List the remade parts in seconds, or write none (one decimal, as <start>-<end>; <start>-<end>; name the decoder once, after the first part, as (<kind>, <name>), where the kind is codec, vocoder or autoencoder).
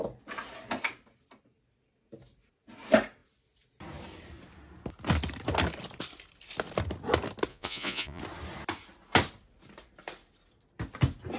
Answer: 7.5-8.2 (vocoder, Vocos)